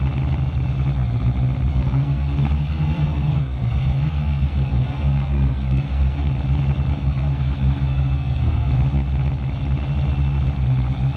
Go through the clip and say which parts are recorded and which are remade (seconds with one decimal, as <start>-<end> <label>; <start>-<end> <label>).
0.0-1.7 recorded; 1.7-6.3 remade; 6.3-6.9 recorded; 6.9-8.7 remade; 8.7-11.2 recorded